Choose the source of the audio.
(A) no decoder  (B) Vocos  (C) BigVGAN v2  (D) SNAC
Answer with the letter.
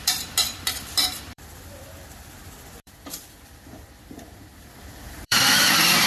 C